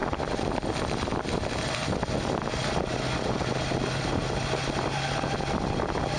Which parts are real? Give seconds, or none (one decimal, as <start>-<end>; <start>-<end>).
0.0-6.2